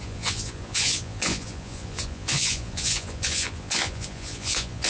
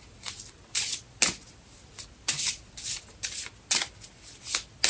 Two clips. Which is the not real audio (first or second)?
first